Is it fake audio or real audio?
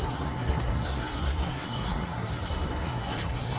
fake